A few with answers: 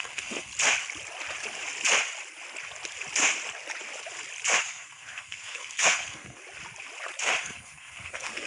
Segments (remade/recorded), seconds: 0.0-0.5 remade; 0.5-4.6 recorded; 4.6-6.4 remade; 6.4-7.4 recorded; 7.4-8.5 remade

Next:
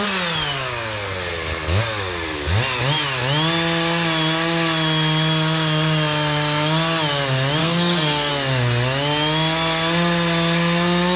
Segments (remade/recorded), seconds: 0.0-7.6 recorded; 7.6-8.3 remade; 8.3-11.2 recorded